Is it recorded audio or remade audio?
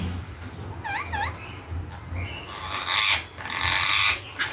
recorded